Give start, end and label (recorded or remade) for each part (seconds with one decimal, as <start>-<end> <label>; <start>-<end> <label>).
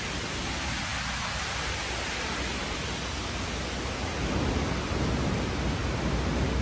0.0-6.6 recorded